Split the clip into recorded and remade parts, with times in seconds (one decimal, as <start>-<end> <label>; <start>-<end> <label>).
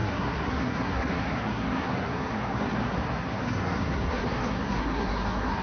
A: 0.0-5.6 remade